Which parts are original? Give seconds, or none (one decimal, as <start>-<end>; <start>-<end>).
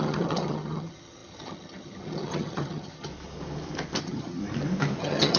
3.1-4.0; 4.4-5.0